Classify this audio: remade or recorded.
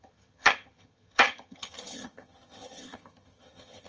remade